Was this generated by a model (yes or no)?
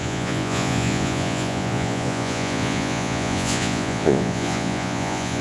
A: yes